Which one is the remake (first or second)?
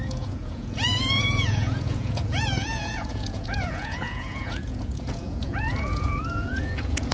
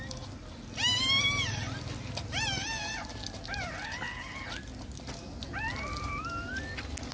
first